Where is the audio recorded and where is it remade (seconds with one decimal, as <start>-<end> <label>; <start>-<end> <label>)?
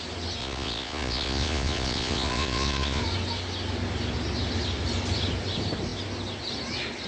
0.0-0.4 recorded; 0.4-3.0 remade; 3.0-7.1 recorded